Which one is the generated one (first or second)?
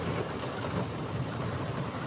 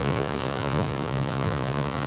second